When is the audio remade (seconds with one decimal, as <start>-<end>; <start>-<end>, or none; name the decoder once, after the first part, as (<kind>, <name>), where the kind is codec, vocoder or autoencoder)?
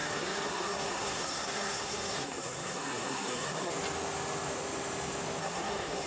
0.0-3.7 (codec, SNAC); 5.4-6.1